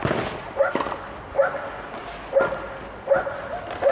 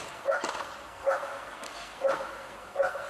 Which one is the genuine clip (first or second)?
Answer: first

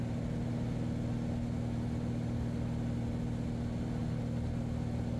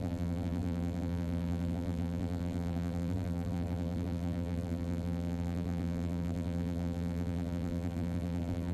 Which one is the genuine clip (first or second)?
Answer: first